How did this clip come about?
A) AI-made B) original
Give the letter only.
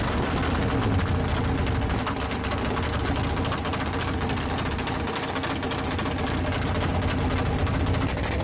B